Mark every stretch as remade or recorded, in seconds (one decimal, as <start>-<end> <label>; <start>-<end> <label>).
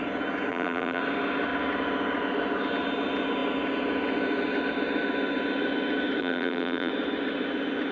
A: 0.0-0.5 recorded; 0.5-1.0 remade; 1.0-6.2 recorded; 6.2-6.9 remade; 6.9-7.9 recorded